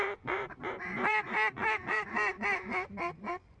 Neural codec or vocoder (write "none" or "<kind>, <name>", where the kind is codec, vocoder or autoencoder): vocoder, Vocos